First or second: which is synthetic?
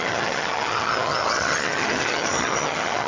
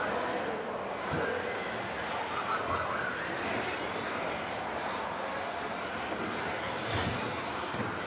first